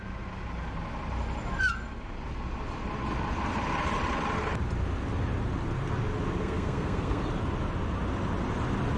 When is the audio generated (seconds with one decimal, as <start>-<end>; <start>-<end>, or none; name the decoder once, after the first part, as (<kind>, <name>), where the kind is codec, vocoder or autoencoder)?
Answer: 6.4-7.2 (codec, SNAC)